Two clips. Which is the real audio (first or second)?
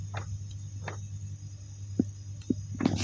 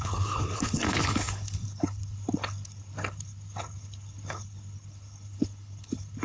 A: first